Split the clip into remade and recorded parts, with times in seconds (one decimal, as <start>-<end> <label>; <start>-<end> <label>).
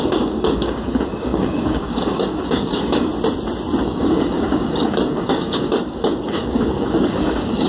0.0-3.1 remade; 3.1-3.8 recorded; 3.8-7.7 remade